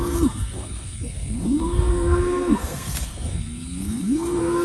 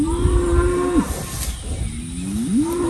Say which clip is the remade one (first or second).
first